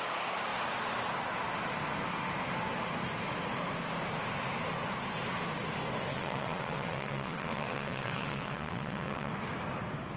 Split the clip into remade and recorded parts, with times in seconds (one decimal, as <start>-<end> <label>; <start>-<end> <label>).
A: 0.0-6.1 recorded; 6.1-9.3 remade; 9.3-10.2 recorded